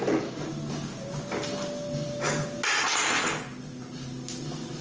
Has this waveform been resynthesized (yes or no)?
no